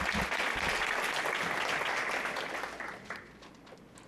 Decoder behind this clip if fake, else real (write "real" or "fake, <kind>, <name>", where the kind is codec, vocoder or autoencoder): real